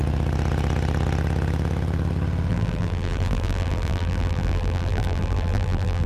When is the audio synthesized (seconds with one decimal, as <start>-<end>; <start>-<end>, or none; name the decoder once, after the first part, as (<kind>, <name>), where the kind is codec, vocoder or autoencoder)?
2.5-6.1 (vocoder, BigVGAN v2)